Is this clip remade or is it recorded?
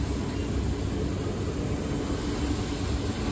recorded